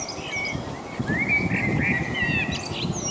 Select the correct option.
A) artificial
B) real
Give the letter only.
B